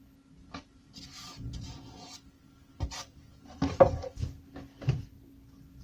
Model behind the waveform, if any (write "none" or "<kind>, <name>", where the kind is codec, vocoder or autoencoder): none